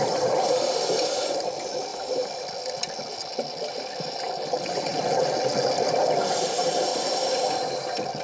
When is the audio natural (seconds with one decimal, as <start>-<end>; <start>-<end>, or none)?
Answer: 0.0-6.9; 7.4-8.2